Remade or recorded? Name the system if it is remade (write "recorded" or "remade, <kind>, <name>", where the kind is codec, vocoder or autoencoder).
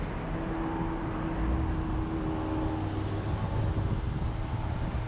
recorded